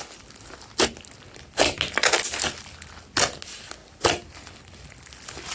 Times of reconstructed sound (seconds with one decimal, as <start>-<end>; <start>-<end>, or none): none